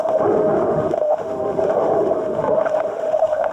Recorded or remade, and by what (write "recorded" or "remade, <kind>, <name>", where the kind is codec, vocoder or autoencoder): remade, autoencoder, DAC-VAE